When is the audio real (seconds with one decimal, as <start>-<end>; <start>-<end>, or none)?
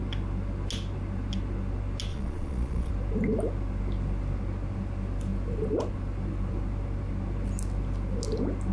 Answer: 0.0-2.1; 2.9-8.7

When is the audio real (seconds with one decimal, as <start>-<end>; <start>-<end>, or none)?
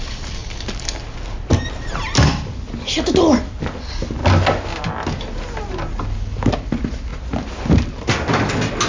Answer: 0.0-8.9